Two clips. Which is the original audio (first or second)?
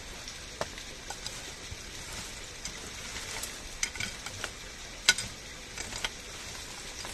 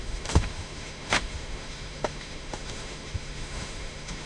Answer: first